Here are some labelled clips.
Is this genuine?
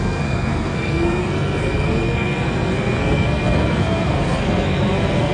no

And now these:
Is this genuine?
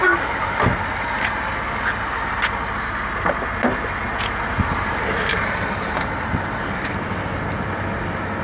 yes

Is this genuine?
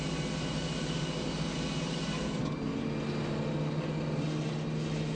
yes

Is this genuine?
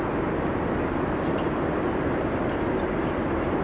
yes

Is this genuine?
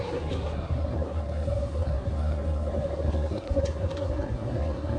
no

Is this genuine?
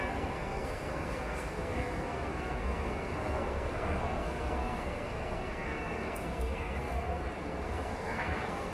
no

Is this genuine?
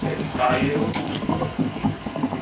no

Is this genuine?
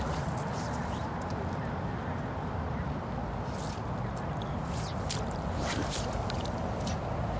yes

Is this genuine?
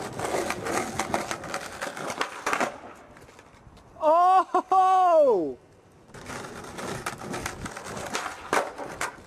yes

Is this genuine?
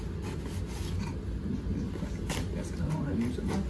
yes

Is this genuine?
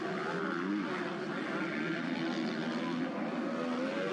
yes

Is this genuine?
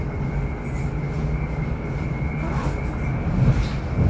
yes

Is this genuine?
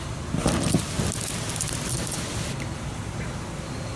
yes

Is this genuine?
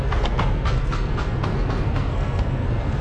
no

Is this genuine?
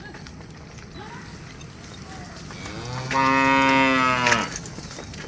yes